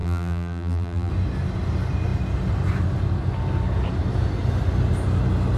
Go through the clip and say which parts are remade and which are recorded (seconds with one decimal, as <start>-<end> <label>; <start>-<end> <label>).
0.0-1.1 remade; 1.1-5.6 recorded

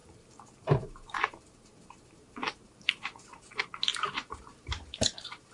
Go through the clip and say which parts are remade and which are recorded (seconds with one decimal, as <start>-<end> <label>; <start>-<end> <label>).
0.0-3.3 remade; 3.3-3.9 recorded; 3.9-5.5 remade